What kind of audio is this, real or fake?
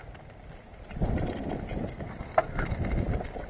real